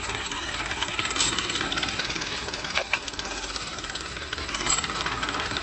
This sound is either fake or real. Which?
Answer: fake